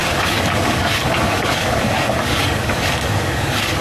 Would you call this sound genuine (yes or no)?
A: no